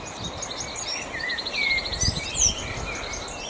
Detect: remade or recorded recorded